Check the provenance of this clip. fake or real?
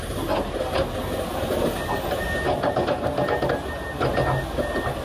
real